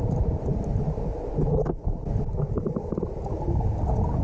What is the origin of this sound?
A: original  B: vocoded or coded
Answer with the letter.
A